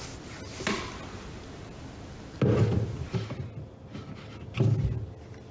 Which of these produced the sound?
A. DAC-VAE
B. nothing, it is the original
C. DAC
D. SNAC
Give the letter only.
B